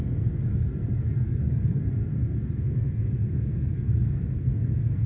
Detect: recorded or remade remade